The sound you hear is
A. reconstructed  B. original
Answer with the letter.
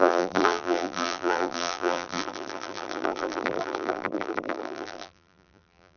A